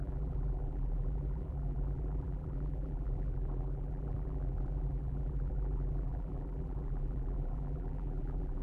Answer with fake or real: fake